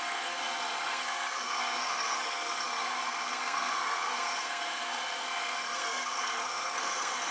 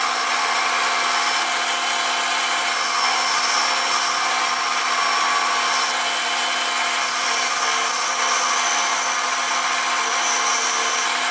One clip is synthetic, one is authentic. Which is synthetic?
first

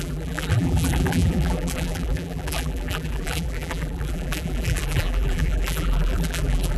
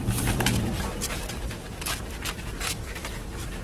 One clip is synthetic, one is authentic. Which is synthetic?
first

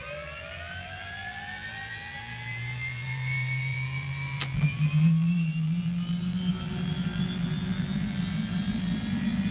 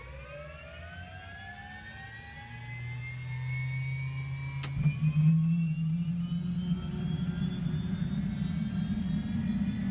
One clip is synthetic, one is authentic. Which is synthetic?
first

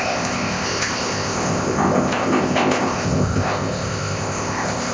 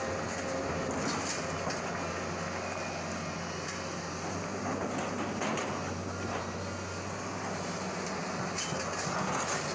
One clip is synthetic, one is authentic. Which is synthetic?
first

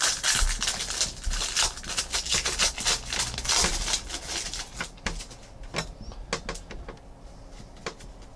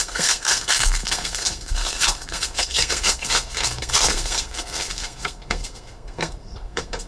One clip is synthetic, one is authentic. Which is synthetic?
second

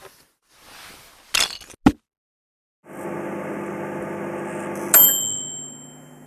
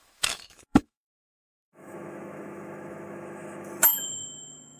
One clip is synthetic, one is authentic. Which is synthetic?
second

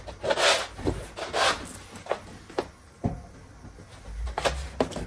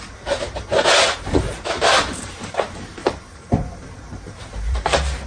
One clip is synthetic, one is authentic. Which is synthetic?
second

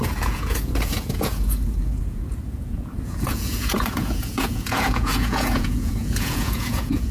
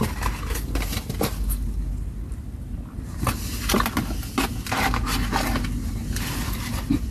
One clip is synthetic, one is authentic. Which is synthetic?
first